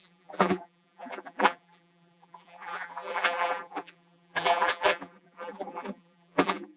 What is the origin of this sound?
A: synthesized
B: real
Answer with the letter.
A